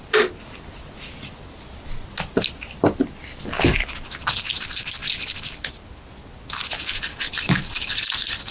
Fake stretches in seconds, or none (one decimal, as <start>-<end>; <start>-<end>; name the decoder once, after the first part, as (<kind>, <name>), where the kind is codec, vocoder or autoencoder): none